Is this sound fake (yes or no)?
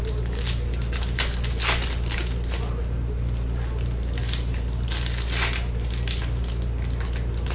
no